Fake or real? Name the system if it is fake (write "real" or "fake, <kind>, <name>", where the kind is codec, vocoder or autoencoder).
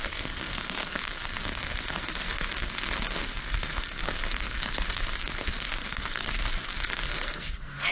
fake, codec, SNAC